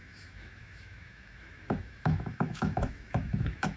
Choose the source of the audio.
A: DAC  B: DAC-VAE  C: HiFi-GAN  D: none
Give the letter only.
B